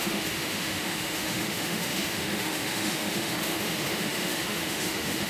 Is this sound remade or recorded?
remade